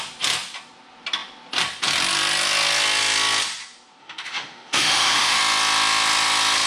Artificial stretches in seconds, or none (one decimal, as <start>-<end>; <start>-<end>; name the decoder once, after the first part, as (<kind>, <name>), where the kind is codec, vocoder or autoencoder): 4.0-5.4 (autoencoder, DAC-VAE)